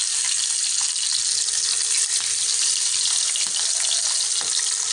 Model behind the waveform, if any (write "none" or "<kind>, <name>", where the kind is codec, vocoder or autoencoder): none